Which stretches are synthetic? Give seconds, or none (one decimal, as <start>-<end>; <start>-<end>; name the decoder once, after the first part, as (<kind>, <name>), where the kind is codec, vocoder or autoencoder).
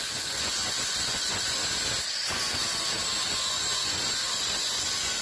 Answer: 0.0-1.6 (vocoder, Vocos); 3.2-5.2